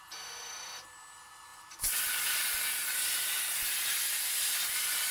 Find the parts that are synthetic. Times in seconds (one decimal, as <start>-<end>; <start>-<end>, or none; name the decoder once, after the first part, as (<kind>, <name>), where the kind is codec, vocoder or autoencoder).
none